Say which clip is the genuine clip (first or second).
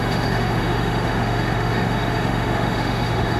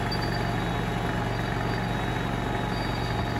second